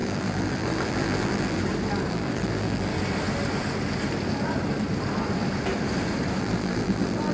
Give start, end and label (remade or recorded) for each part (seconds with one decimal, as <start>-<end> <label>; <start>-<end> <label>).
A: 0.0-1.6 remade; 1.6-2.1 recorded; 2.1-2.9 remade; 2.9-6.4 recorded; 6.4-7.3 remade